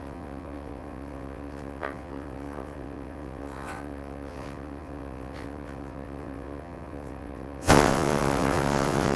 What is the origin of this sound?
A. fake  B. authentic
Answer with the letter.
A